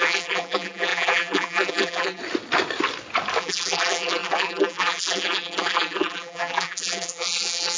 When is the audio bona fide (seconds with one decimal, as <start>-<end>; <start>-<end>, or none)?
2.2-3.4